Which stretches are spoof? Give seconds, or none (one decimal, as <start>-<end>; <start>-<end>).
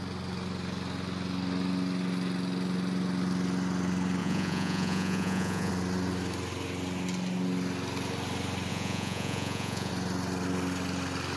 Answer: 4.2-5.7; 8.7-9.9